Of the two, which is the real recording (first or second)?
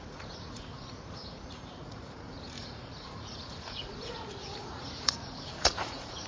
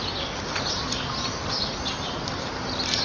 second